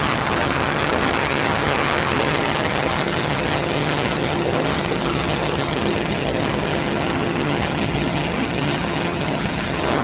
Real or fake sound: fake